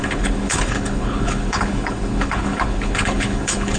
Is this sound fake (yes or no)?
yes